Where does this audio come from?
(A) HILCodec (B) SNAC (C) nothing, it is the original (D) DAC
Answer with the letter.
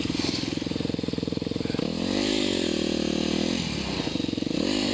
C